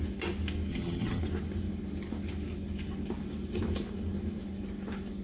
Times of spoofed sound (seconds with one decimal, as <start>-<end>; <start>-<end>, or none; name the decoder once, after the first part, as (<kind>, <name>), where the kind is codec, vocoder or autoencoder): 0.7-1.2 (vocoder, HiFi-GAN)